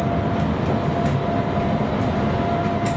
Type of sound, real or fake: real